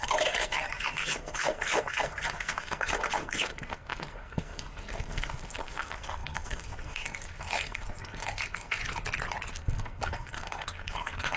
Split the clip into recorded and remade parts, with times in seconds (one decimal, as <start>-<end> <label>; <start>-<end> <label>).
0.0-8.8 remade; 8.8-9.5 recorded; 9.5-11.4 remade

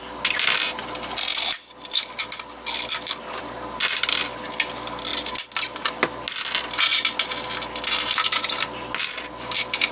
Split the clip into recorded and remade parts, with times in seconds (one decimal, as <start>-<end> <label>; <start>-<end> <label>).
0.0-9.9 recorded

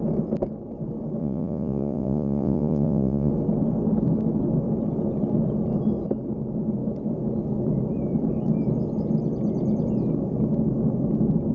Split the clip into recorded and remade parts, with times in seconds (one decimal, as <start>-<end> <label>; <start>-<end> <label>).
0.0-1.2 recorded; 1.2-3.3 remade; 3.3-11.5 recorded